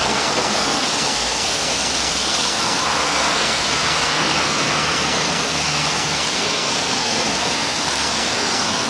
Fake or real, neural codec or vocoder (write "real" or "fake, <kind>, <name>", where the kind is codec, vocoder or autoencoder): fake, codec, SNAC